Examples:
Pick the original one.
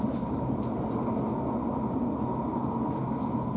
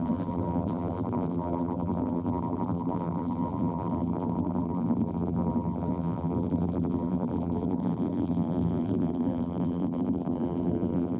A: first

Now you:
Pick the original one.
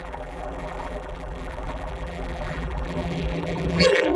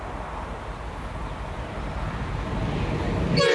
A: second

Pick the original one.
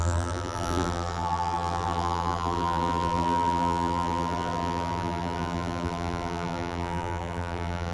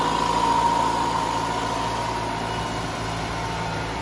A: second